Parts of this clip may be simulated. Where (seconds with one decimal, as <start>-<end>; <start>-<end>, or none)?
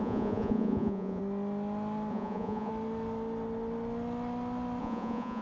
0.0-1.2; 2.1-2.7; 4.8-5.4